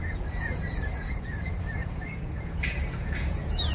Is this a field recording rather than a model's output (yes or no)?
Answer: no